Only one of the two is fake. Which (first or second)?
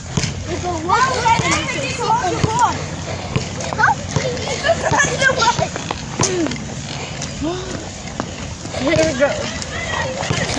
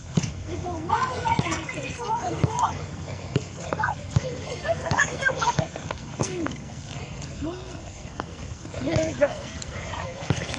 second